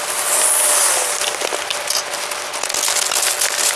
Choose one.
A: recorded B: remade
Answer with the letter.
A